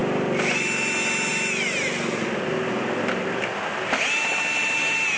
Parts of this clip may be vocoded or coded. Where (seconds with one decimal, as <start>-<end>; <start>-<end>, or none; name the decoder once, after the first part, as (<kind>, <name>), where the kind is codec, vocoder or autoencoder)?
none